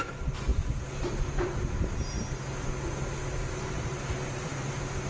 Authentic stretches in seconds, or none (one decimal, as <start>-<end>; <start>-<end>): 0.5-3.6; 4.5-5.1